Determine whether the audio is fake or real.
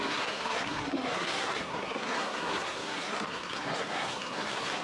fake